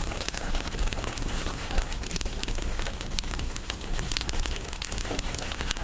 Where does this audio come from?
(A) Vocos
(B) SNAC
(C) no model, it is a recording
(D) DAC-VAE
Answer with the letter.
B